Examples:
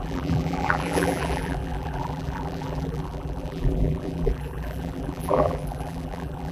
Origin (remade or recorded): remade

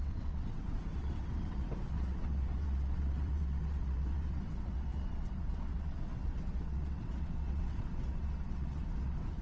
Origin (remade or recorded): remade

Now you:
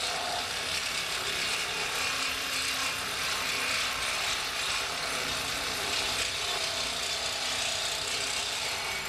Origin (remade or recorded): recorded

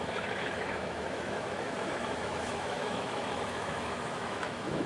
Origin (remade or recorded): remade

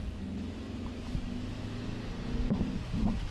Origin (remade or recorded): recorded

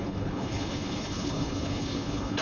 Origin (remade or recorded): remade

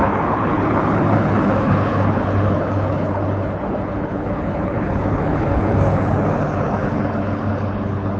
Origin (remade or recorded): remade